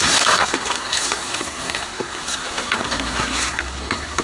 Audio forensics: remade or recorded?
remade